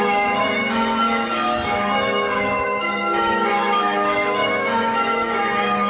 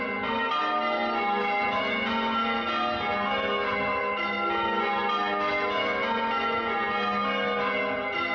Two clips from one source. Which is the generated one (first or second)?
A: first